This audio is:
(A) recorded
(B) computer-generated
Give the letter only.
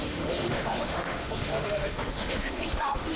B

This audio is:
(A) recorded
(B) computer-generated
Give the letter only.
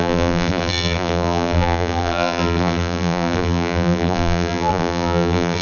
B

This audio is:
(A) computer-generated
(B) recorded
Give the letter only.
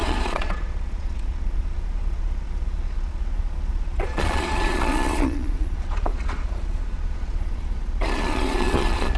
A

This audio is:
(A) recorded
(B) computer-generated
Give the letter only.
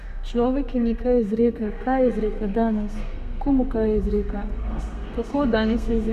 B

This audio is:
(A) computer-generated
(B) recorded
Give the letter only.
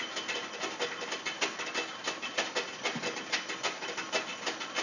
B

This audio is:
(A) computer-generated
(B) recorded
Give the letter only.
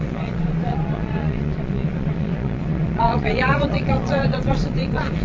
A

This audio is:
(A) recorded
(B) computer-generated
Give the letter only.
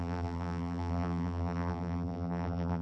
B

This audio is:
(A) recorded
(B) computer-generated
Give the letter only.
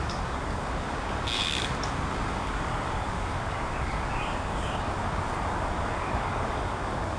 B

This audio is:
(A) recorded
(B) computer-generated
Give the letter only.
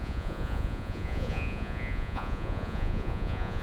B